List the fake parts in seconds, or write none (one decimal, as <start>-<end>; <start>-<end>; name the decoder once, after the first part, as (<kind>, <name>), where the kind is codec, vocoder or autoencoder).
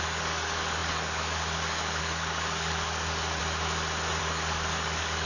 0.0-3.4 (codec, DAC); 4.2-5.3